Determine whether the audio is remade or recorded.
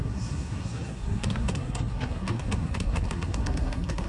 remade